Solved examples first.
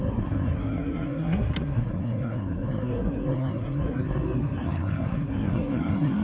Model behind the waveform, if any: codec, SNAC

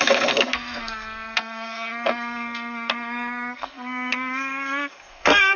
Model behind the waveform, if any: codec, SNAC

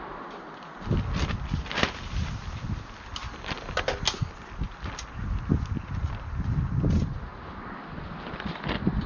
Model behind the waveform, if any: none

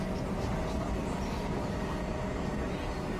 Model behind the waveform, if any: none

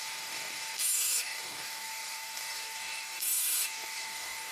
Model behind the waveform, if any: codec, DAC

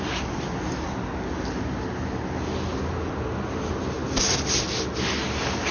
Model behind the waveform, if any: none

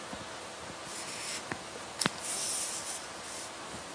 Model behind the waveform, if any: none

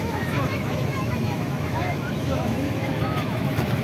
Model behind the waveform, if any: autoencoder, DAC-VAE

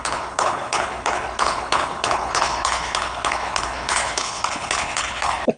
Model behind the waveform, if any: codec, HILCodec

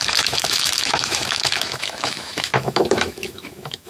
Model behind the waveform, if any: autoencoder, DAC-VAE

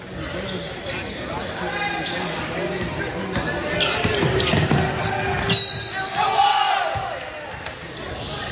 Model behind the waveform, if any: none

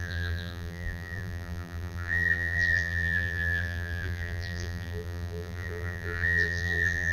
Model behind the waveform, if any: vocoder, BigVGAN v2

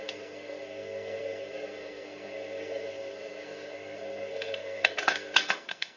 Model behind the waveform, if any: codec, SNAC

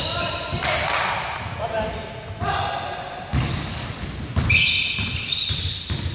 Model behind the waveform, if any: none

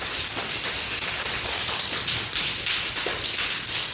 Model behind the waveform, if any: none